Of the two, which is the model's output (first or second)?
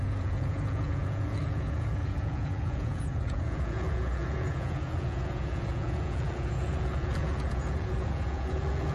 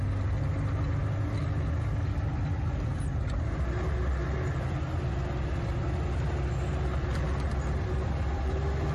first